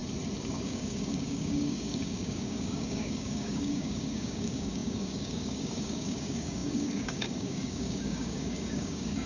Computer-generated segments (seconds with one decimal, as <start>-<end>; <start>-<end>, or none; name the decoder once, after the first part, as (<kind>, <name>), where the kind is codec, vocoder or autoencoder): 0.5-9.3 (codec, DAC)